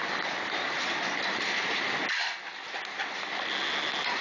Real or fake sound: real